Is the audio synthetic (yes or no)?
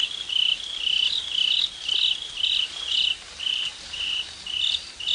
no